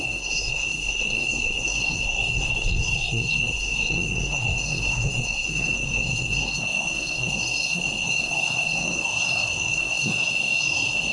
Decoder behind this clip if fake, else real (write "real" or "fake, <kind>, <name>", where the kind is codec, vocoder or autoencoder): fake, codec, SNAC